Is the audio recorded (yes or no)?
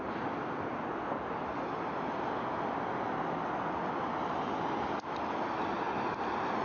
yes